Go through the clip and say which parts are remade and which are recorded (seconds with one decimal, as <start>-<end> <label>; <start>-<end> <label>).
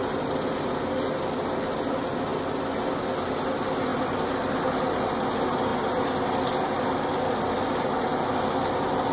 0.0-9.1 recorded